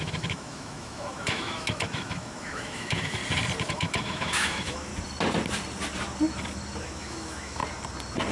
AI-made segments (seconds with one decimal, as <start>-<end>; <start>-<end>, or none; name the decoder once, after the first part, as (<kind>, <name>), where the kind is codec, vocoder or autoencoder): 0.0-3.2 (autoencoder, DAC-VAE); 3.7-4.9; 6.8-7.6